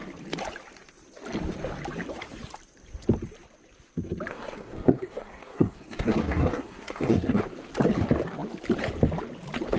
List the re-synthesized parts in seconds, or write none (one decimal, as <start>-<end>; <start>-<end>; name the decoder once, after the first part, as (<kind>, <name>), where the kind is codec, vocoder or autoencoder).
4.3-7.4 (codec, SNAC)